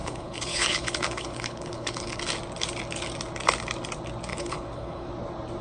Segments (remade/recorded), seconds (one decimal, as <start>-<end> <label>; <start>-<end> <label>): 0.0-2.2 remade; 2.2-4.3 recorded; 4.3-5.1 remade; 5.1-5.6 recorded